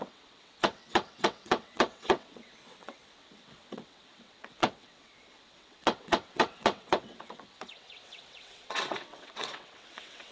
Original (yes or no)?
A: no